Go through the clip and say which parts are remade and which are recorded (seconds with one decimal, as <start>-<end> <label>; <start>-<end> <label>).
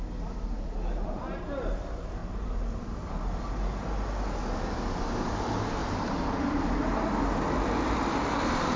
0.0-2.2 recorded; 2.2-3.1 remade; 3.1-5.8 recorded; 5.8-6.8 remade; 6.8-8.8 recorded